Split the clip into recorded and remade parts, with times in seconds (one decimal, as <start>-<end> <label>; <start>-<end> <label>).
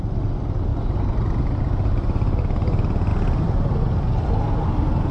0.0-5.1 recorded